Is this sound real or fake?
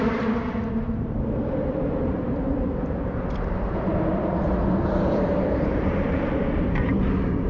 fake